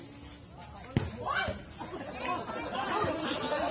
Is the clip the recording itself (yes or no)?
yes